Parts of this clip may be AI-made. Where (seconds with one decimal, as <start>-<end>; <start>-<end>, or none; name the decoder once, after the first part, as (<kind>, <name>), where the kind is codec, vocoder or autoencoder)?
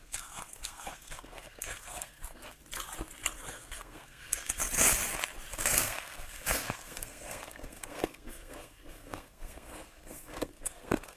0.0-2.6 (codec, SNAC); 3.5-4.6; 5.5-11.2